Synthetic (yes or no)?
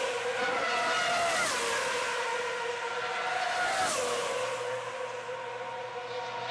no